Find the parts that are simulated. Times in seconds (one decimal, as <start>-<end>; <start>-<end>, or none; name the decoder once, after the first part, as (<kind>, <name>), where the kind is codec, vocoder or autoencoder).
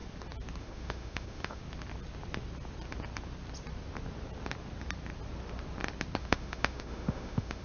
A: 0.6-1.6 (autoencoder, DAC-VAE); 6.2-7.6